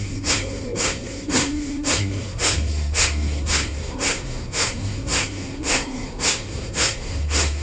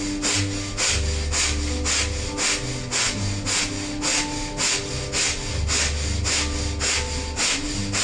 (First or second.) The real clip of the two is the second